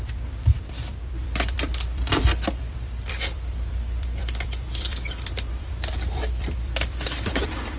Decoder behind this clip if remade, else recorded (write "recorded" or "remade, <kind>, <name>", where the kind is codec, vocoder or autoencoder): remade, vocoder, BigVGAN v2